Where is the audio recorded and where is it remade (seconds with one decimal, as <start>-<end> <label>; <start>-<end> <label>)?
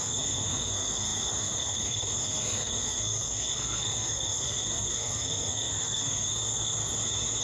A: 0.0-6.8 remade; 6.8-7.4 recorded